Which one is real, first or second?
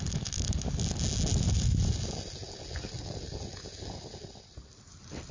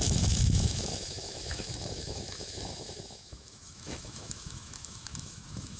first